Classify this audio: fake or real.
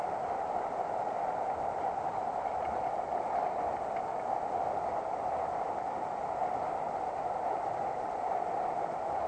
real